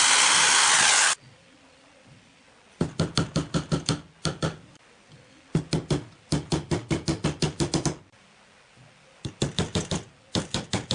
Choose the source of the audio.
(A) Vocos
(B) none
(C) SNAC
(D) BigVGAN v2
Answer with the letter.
B